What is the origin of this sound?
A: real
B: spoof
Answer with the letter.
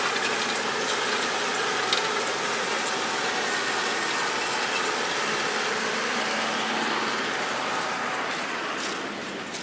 A